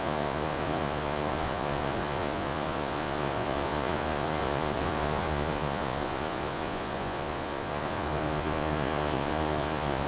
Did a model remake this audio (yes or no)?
yes